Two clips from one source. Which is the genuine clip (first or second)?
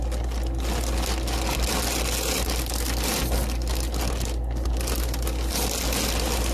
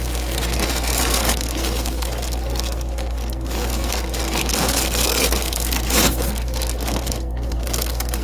first